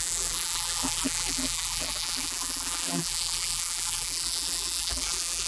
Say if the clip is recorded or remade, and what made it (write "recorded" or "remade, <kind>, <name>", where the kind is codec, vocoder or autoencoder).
remade, vocoder, BigVGAN v2